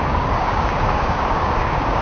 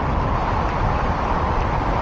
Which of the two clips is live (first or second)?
second